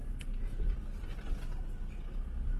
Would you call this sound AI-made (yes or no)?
no